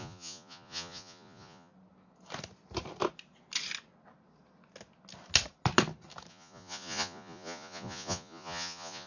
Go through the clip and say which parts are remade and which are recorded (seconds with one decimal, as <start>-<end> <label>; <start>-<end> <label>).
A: 0.0-1.7 remade; 1.7-6.3 recorded; 6.3-9.1 remade